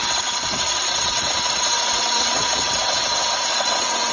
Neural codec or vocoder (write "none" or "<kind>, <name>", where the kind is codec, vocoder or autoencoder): vocoder, WaveNeXt